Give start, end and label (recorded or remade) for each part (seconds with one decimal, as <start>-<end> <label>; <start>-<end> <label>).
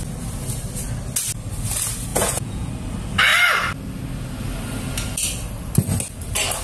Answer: 0.0-2.1 recorded; 2.1-2.7 remade; 2.7-6.6 recorded